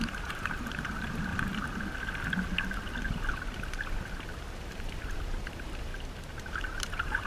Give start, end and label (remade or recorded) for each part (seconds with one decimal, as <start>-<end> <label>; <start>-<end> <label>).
0.0-1.3 remade; 1.3-4.3 recorded; 4.3-5.9 remade; 5.9-6.5 recorded; 6.5-7.3 remade